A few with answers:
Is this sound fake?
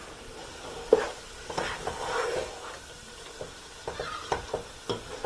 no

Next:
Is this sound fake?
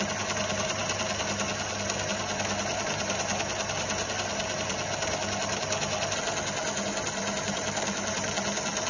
no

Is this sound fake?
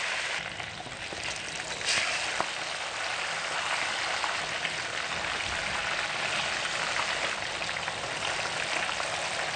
no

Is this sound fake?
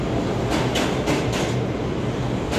no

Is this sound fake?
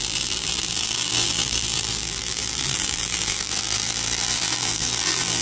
yes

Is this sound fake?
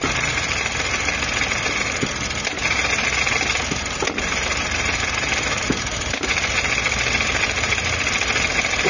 no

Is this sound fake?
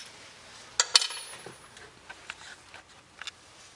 no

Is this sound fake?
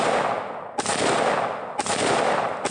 no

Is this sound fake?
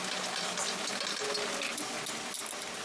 no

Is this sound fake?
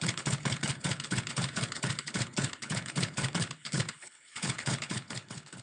yes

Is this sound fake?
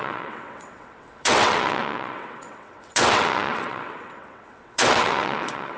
yes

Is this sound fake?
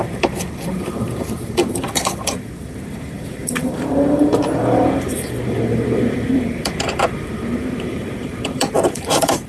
yes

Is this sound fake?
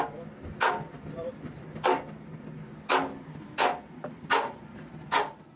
no